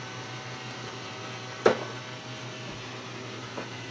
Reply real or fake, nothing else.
real